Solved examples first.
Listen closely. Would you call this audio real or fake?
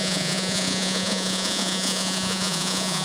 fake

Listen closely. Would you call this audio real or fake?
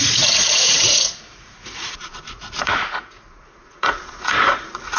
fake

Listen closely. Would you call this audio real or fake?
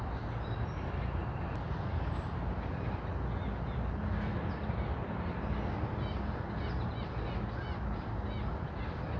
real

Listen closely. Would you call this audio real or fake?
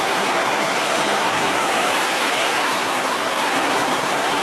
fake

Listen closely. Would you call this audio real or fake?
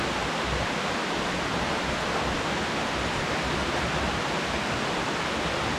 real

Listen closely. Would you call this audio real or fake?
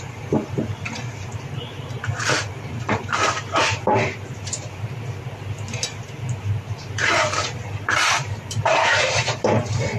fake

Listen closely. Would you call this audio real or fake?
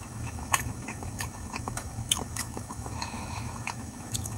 fake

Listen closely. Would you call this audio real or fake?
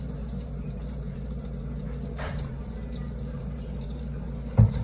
fake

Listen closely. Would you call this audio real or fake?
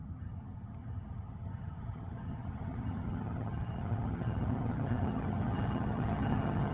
fake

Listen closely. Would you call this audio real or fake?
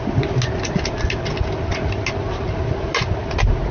real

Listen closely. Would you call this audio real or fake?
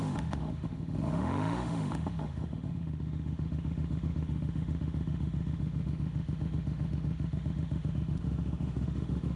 fake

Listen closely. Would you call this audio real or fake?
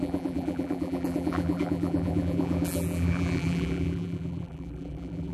fake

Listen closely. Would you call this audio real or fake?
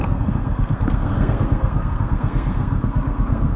fake